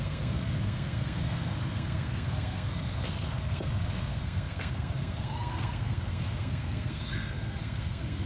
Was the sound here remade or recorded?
remade